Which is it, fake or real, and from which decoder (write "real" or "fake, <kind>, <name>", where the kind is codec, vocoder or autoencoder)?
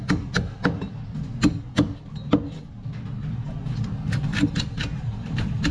real